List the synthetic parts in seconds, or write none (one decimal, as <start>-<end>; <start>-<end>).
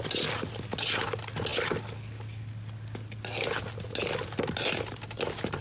none